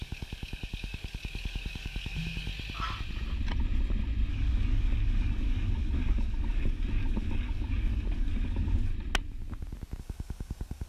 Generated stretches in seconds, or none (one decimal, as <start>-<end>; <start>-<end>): 0.0-2.5; 4.3-8.9; 10.0-10.9